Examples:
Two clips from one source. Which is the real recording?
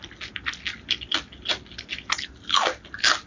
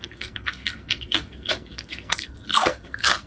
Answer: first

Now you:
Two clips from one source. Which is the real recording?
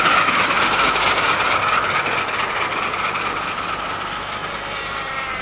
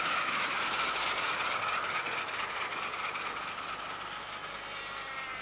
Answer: second